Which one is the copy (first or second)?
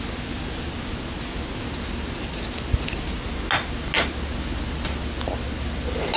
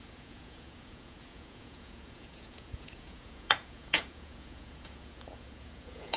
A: second